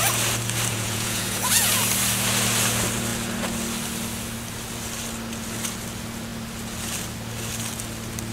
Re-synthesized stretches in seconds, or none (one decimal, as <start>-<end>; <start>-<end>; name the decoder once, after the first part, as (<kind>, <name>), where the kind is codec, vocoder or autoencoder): 0.7-1.8 (vocoder, Vocos)